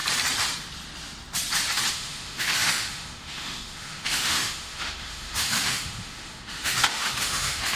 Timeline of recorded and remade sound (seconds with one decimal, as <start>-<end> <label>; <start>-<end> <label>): 0.0-1.9 recorded; 1.9-7.8 remade